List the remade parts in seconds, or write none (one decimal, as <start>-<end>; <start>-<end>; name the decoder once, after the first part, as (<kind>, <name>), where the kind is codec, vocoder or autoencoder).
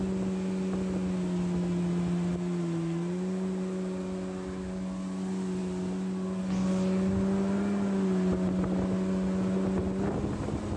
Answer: none